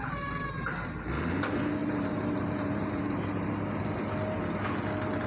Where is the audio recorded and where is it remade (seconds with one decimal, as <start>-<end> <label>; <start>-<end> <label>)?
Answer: 0.0-1.8 recorded; 1.8-3.0 remade; 3.0-5.3 recorded